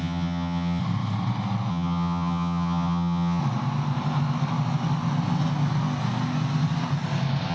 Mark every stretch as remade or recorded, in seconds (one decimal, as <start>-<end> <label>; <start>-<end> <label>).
0.0-0.8 remade; 0.8-1.7 recorded; 1.7-3.4 remade; 3.4-7.5 recorded